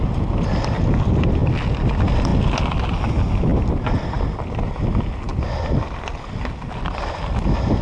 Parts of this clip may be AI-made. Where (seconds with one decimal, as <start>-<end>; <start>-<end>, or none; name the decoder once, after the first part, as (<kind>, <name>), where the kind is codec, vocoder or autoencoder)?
none